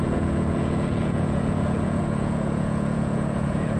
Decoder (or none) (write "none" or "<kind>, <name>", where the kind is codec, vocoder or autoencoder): vocoder, Vocos